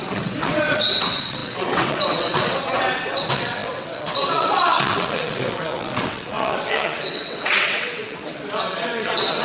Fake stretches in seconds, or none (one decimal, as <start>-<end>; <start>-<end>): 0.0-9.4